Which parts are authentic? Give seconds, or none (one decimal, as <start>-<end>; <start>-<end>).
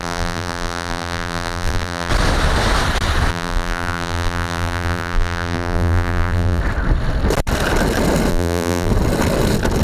2.1-3.3; 6.6-8.3; 8.9-9.8